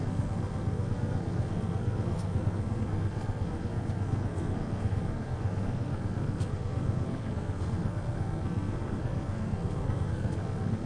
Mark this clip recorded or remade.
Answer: remade